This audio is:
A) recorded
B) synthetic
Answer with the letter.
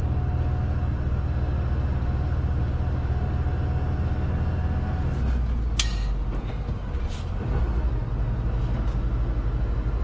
A